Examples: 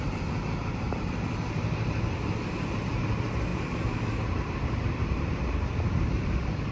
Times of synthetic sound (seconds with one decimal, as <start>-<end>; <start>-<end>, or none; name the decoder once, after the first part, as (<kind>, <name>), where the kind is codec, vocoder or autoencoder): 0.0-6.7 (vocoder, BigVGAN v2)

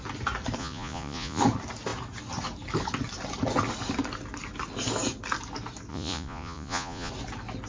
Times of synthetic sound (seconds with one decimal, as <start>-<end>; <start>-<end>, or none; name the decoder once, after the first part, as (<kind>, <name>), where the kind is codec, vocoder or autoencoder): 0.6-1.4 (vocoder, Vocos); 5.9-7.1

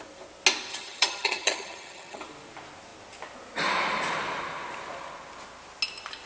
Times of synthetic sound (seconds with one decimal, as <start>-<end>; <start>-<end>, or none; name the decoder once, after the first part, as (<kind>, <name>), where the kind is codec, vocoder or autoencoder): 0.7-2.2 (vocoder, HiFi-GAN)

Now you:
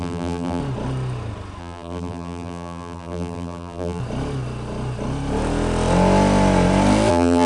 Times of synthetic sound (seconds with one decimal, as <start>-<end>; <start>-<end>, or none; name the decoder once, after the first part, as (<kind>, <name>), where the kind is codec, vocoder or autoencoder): 0.0-0.6 (vocoder, BigVGAN v2); 1.6-4.0; 7.1-7.5

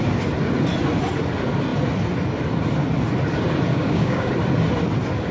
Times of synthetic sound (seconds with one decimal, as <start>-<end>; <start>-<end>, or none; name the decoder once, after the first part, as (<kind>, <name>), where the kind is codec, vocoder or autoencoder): 3.7-4.3 (codec, DAC)

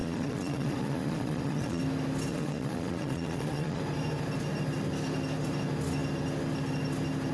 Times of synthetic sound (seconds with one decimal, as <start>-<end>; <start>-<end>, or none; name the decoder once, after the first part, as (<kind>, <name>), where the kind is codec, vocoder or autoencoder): 0.0-1.8 (vocoder, Vocos); 2.3-3.8

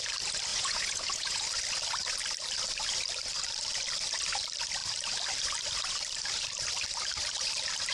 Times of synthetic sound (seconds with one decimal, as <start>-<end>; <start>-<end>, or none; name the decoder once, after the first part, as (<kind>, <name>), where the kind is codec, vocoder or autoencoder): 0.5-1.4 (vocoder, Vocos)